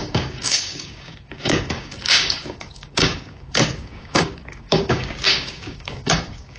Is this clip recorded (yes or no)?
no